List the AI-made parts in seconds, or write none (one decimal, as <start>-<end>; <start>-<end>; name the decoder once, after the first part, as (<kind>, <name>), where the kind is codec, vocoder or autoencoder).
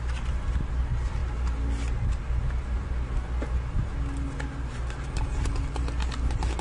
none